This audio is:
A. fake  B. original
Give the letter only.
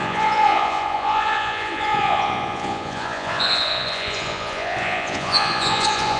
A